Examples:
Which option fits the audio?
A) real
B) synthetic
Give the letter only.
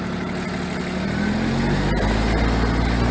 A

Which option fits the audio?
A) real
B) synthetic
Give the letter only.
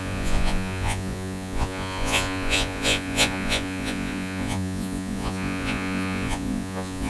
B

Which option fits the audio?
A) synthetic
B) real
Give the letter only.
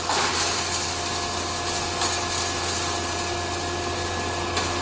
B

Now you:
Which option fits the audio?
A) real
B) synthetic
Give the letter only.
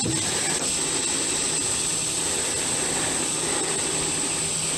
A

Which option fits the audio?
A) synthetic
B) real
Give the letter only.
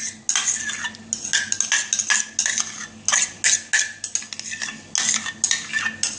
B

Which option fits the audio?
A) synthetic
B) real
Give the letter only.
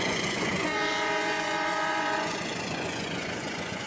A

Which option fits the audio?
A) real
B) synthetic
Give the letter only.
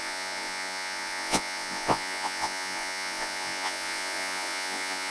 B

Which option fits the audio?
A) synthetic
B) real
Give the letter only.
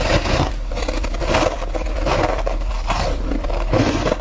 B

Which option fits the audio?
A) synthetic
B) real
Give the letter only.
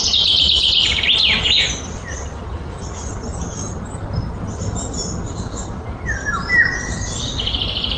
B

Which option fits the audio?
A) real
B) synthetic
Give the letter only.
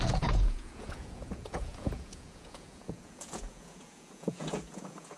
B